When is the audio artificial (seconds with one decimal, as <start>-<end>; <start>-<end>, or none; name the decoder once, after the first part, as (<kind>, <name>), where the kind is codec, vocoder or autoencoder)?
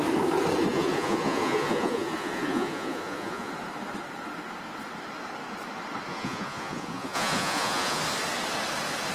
0.7-3.5 (vocoder, Vocos); 6.1-8.0